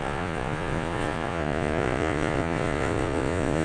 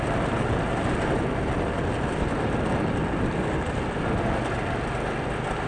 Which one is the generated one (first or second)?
first